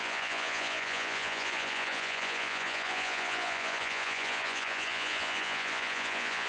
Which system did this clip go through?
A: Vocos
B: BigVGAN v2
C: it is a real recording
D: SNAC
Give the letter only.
A